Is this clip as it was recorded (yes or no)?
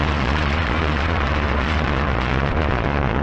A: no